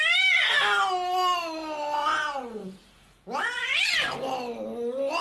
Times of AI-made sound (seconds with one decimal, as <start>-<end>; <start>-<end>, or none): 2.0-3.4

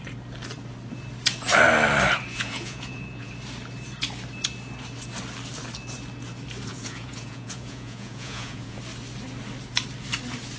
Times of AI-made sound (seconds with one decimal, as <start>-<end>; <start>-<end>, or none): 2.3-3.3; 6.7-8.8

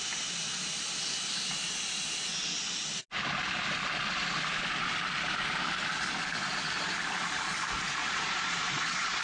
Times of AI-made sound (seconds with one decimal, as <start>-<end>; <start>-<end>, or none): 8.0-9.2